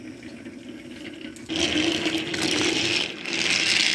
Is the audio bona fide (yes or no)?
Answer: yes